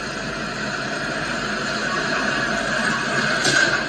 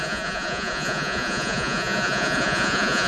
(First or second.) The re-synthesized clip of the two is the second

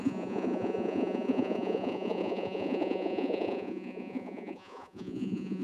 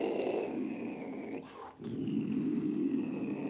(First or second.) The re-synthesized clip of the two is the first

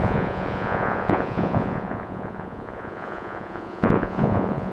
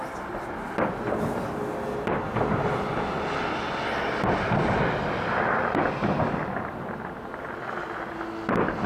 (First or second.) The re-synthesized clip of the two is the first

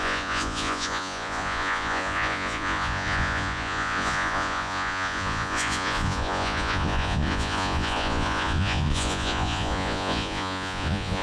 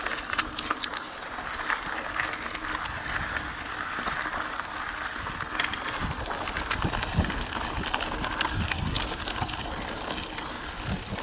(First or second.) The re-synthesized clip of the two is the first